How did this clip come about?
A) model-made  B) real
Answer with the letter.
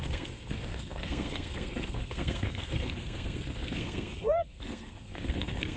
A